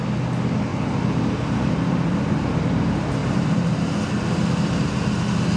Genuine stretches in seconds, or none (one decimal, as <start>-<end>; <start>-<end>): 0.0-0.7; 2.6-3.2; 3.8-5.6